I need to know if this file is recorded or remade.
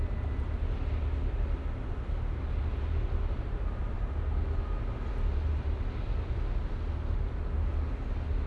recorded